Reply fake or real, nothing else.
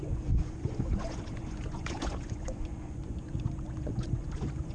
fake